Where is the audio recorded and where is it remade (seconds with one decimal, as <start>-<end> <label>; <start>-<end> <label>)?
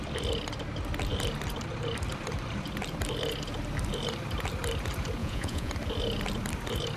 0.0-5.2 recorded; 5.2-5.7 remade; 5.7-7.0 recorded